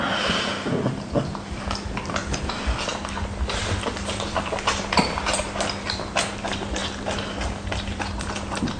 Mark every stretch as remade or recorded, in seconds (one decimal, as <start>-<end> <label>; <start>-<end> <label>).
0.0-8.8 recorded